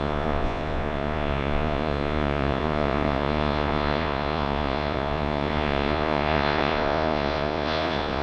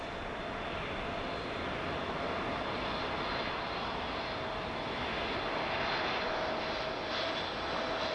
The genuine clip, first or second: second